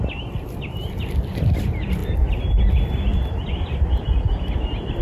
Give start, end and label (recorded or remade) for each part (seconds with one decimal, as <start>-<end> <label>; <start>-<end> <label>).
0.0-5.0 recorded